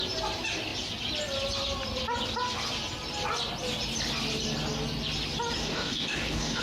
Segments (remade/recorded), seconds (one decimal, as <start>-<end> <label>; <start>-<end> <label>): 0.0-5.6 recorded; 5.6-6.6 remade